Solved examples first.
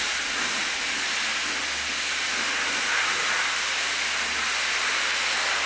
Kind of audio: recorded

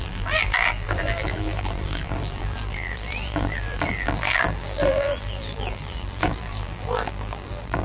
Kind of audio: remade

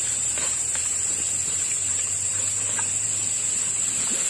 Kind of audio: remade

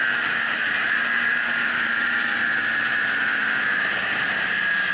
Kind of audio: remade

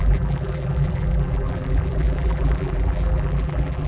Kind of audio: remade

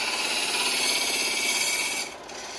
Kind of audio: recorded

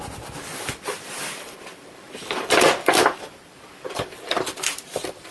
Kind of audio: remade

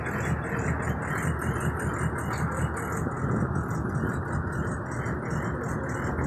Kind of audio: recorded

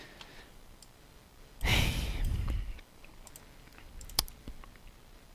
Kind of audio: recorded